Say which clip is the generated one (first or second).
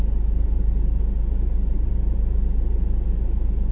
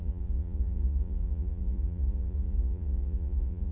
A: second